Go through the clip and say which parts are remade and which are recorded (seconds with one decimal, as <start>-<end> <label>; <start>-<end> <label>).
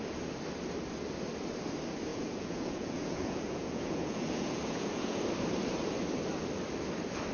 0.0-2.1 recorded; 2.1-5.2 remade; 5.2-7.3 recorded